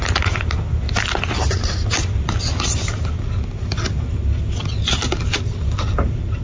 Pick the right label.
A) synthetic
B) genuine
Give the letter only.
B